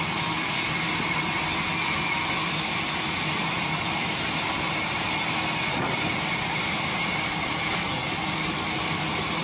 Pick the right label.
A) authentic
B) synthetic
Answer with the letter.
A